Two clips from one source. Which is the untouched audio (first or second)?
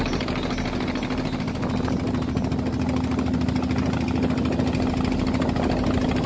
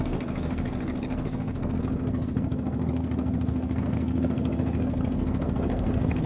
first